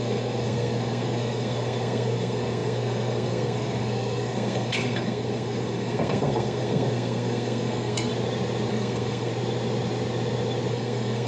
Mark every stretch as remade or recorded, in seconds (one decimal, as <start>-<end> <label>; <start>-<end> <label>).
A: 0.0-8.1 remade; 8.1-8.7 recorded; 8.7-9.3 remade; 9.3-10.7 recorded; 10.7-11.3 remade